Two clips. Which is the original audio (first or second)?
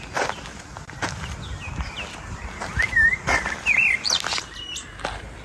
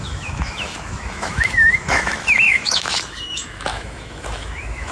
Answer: first